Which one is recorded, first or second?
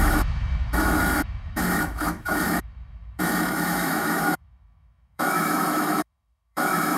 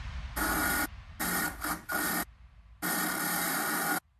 second